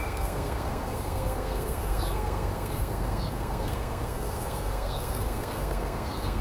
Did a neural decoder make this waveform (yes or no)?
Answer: yes